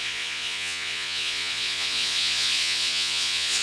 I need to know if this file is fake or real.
fake